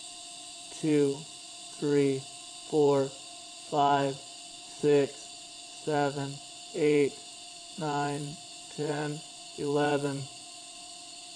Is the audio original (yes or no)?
no